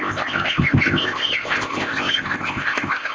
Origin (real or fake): fake